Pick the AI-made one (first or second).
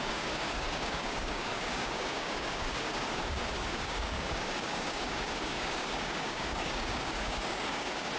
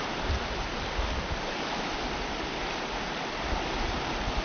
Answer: first